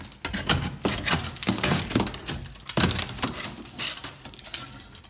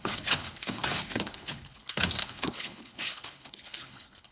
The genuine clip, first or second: first